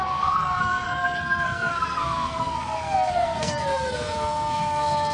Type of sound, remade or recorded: remade